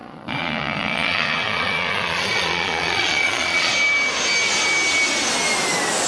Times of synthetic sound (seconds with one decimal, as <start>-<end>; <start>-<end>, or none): 0.0-3.7